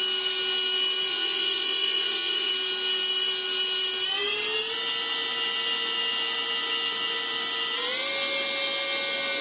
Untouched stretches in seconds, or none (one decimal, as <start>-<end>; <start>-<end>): 0.0-1.1; 2.5-9.4